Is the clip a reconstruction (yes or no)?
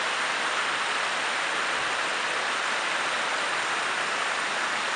no